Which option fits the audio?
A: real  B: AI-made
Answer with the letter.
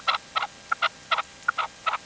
A